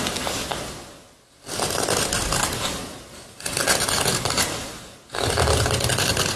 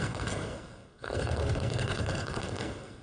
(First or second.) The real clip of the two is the first